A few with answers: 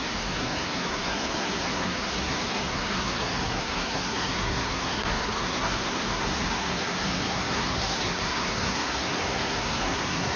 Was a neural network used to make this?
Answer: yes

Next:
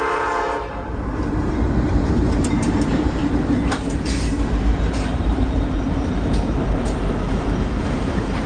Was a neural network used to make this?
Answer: yes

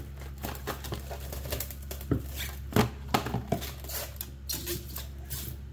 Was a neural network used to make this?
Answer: no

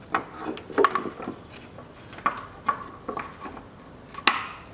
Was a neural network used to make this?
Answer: no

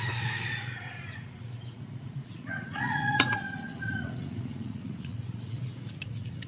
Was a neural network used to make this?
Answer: yes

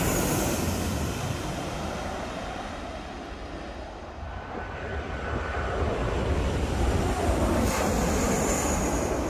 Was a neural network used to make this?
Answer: no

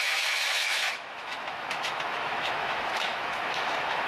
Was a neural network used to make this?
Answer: yes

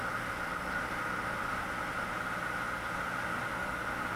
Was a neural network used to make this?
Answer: no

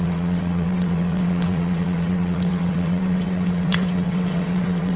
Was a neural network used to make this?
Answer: yes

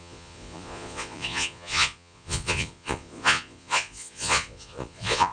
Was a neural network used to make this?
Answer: yes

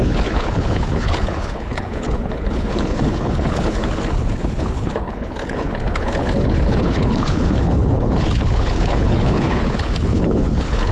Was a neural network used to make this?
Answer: yes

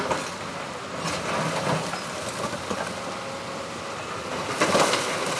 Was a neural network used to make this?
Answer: no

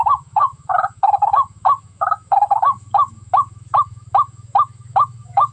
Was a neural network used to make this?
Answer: yes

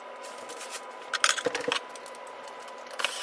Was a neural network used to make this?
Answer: no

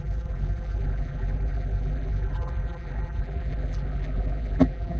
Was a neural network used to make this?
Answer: yes